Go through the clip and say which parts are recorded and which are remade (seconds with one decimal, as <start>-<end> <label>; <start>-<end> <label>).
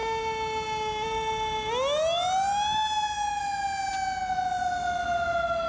0.0-5.7 recorded